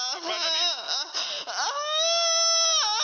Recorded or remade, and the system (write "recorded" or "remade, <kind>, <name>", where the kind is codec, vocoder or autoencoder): recorded